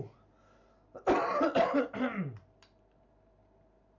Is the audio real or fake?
real